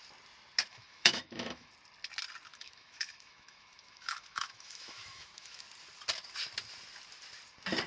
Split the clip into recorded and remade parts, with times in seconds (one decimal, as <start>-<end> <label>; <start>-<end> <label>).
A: 0.0-0.7 recorded; 0.7-1.7 remade; 1.7-2.5 recorded; 2.5-5.6 remade; 5.6-7.9 recorded